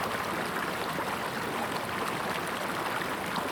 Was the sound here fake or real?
real